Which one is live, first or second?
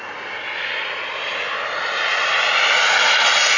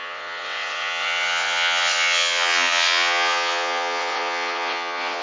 first